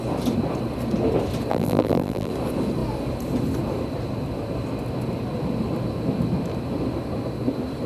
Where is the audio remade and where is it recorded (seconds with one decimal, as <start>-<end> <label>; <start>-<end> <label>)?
0.0-1.5 recorded; 1.5-2.3 remade; 2.3-7.9 recorded